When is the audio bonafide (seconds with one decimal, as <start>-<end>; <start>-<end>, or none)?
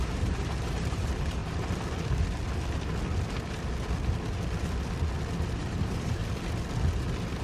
1.4-5.5; 6.2-7.4